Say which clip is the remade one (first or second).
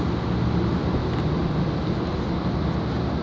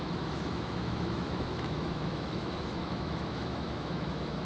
second